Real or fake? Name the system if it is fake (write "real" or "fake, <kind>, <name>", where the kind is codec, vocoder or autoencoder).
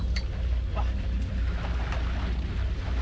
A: real